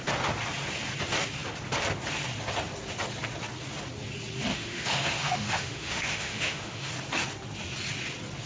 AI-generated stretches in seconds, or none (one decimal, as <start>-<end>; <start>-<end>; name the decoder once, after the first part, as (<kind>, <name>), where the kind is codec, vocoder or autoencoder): 4.5-6.9 (autoencoder, DAC-VAE)